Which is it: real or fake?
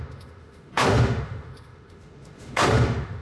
fake